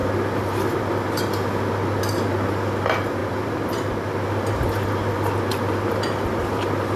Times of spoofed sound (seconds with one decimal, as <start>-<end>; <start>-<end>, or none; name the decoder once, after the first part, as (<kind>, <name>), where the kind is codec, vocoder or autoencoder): 3.2-3.9 (vocoder, BigVGAN v2)